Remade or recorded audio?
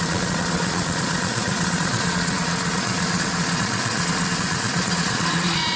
remade